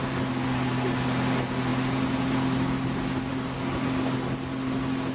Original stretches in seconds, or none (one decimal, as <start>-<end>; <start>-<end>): 0.0-5.1

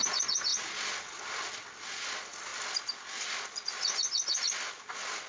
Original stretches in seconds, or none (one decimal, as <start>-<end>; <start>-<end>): 0.0-5.3

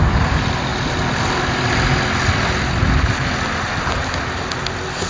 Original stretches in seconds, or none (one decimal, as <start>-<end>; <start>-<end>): 0.0-5.1

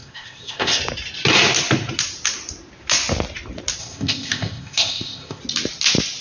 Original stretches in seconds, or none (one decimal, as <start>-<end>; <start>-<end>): 0.8-3.8; 5.4-6.2

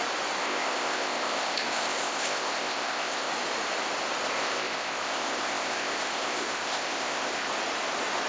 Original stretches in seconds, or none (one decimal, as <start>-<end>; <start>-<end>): 0.0-0.4; 3.3-4.2; 7.5-8.3

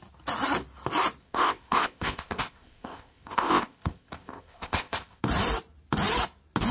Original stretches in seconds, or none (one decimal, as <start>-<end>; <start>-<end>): 0.0-1.2; 5.2-6.7